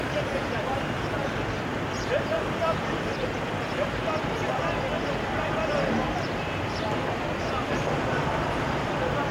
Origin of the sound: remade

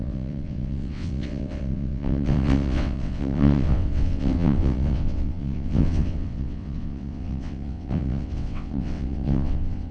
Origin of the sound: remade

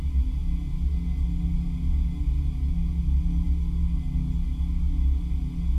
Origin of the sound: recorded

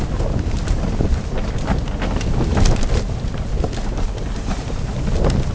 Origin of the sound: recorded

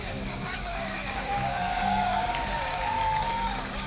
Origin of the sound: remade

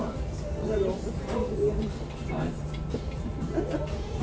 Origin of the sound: remade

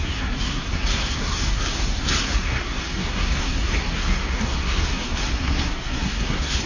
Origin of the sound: remade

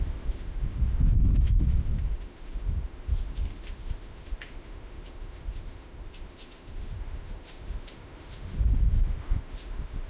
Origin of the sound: remade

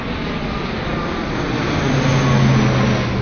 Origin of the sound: recorded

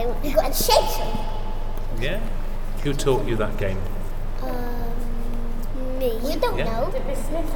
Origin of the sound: recorded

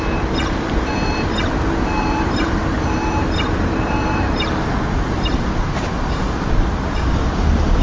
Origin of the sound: remade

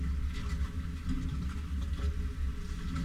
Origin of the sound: recorded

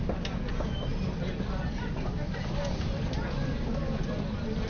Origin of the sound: recorded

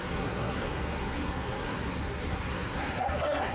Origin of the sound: remade